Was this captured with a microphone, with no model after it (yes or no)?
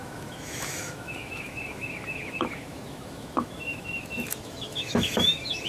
no